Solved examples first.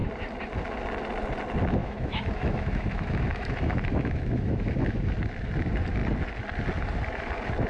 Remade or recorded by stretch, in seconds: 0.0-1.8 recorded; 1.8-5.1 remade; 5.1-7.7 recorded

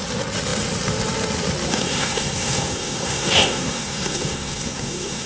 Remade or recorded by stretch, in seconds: 0.0-1.7 recorded; 1.7-5.3 remade

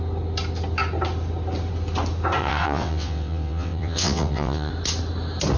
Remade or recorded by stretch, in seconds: 0.0-2.4 recorded; 2.4-4.7 remade; 4.7-5.6 recorded

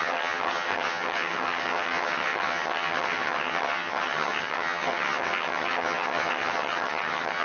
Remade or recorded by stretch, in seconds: 0.0-7.4 remade

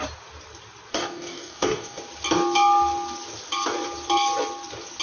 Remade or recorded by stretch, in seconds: 0.0-0.9 recorded; 0.9-2.0 remade; 2.0-5.0 recorded